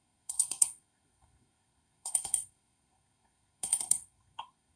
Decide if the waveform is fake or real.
fake